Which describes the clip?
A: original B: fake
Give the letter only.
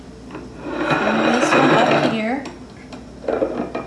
A